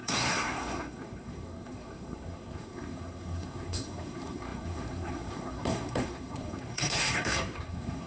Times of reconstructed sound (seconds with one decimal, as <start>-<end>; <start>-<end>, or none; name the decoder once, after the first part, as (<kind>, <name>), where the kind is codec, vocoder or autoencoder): 0.0-8.1 (codec, SNAC)